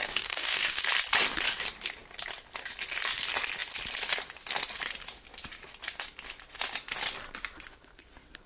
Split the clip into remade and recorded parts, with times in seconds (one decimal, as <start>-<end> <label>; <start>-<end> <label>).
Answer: 0.0-0.8 remade; 0.8-8.5 recorded